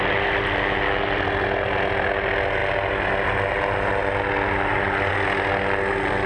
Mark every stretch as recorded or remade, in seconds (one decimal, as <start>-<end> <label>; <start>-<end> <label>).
0.0-6.3 recorded